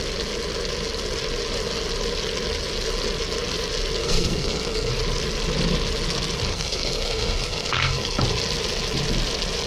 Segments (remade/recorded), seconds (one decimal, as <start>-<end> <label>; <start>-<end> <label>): 0.0-4.0 recorded; 4.0-4.9 remade; 4.9-6.5 recorded; 6.5-8.2 remade; 8.2-9.7 recorded